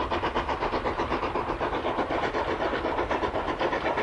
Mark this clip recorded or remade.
recorded